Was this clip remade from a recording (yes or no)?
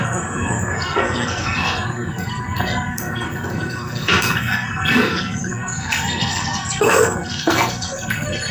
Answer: yes